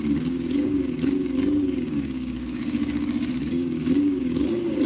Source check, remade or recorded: remade